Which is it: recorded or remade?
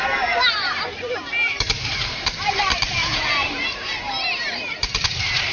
remade